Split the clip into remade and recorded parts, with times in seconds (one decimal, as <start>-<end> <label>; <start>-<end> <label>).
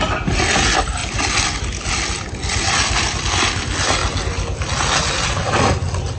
0.0-6.2 recorded